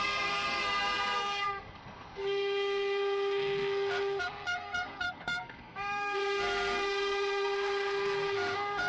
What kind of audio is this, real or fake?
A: fake